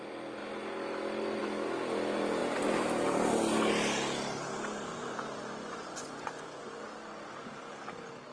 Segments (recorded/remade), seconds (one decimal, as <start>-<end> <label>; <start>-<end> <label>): 0.0-4.9 recorded; 4.9-7.7 remade; 7.7-8.3 recorded